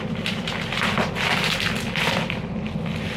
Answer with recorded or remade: recorded